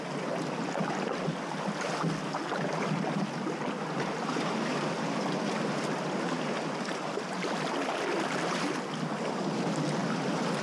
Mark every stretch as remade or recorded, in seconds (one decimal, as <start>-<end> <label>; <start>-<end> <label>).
0.0-10.6 recorded